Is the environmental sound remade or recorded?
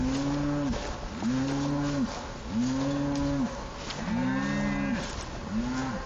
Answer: recorded